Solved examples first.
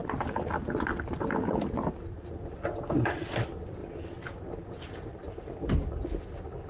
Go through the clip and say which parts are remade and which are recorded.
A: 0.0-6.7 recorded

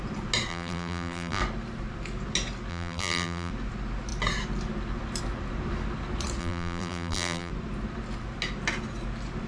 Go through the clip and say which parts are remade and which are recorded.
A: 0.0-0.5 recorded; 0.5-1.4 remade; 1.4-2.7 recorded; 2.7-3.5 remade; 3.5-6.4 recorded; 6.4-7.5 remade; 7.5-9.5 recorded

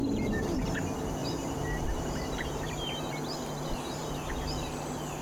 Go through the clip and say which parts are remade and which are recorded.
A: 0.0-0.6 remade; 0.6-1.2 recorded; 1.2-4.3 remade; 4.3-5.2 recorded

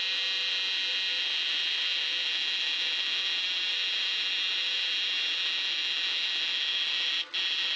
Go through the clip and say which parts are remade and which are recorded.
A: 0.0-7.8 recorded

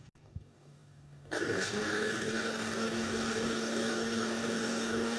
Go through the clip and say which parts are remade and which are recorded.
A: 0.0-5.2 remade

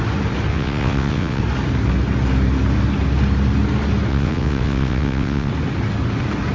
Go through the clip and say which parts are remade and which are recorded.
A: 0.0-0.5 recorded; 0.5-1.4 remade; 1.4-4.1 recorded; 4.1-5.5 remade; 5.5-6.5 recorded